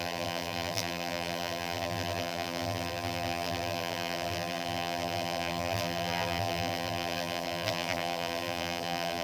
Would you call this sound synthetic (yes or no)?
yes